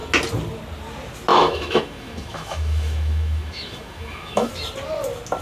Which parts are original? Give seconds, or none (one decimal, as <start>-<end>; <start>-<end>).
0.0-1.3; 4.5-5.4

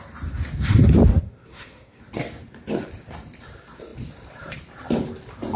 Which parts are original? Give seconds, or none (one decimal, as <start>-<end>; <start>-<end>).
0.0-1.1; 2.0-5.6

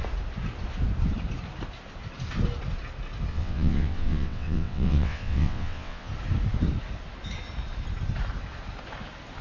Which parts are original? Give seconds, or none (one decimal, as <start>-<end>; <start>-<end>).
0.0-3.3; 6.1-9.4

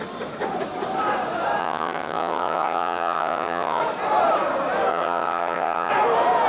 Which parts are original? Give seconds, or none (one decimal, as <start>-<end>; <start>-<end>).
0.0-1.6; 3.8-4.9; 5.9-6.5

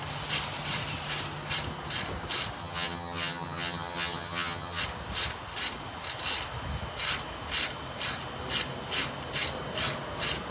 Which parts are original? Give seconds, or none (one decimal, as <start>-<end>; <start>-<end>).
0.0-2.6; 4.8-10.5

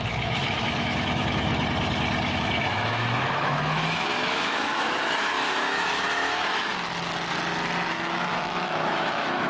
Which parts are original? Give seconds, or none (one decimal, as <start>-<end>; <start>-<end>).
1.5-2.3; 6.7-7.9

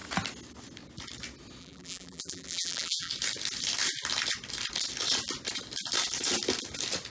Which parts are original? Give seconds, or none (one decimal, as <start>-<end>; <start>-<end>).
0.0-1.6; 3.1-7.1